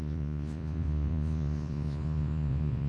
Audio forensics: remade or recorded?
remade